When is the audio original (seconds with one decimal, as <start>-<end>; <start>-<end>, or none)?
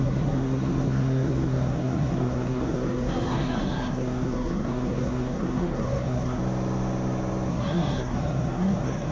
6.4-7.5